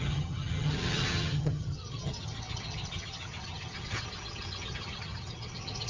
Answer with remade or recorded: remade